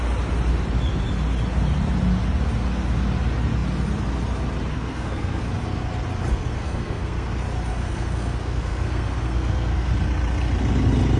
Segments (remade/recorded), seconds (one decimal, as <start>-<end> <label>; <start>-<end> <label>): 0.0-4.7 recorded; 4.7-5.4 remade; 5.4-6.3 recorded; 6.3-7.3 remade; 7.3-7.7 recorded; 7.7-9.9 remade; 9.9-11.2 recorded